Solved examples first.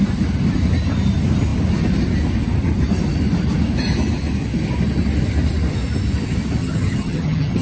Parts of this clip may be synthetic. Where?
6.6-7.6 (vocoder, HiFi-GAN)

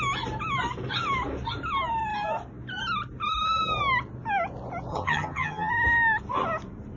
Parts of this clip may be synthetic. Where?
4.9-5.7 (vocoder, HiFi-GAN)

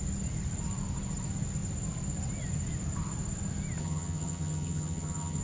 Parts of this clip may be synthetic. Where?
3.8-5.4 (vocoder, HiFi-GAN)

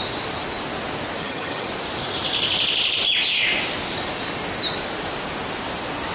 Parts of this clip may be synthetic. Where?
1.2-1.7 (vocoder, HiFi-GAN)

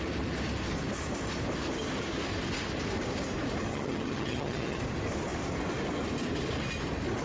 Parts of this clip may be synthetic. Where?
3.7-4.8 (vocoder, HiFi-GAN)

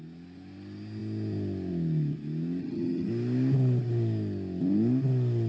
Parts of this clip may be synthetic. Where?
2.6-3.1 (vocoder, HiFi-GAN)

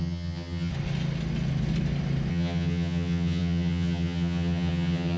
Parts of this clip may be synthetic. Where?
0.0-0.7 (vocoder, HiFi-GAN); 2.3-5.2